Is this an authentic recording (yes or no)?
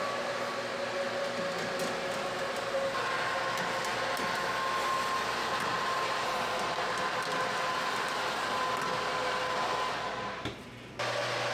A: yes